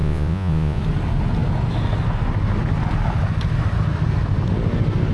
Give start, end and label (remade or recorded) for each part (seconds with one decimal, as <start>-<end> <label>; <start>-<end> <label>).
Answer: 0.0-0.8 remade; 0.8-5.1 recorded